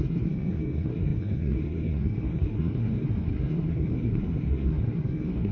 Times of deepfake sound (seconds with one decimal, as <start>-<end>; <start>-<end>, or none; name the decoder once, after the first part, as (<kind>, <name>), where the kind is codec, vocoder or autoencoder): 0.0-5.5 (codec, SNAC)